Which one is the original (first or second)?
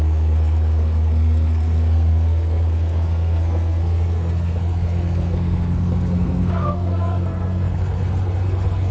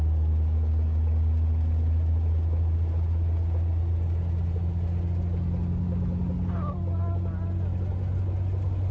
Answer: second